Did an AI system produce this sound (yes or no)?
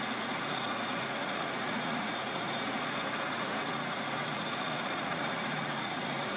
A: yes